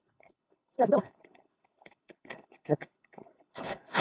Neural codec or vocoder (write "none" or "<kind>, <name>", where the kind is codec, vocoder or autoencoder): codec, HILCodec